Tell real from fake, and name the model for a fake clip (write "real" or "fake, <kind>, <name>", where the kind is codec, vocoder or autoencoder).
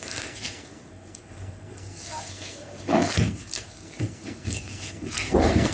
fake, codec, SNAC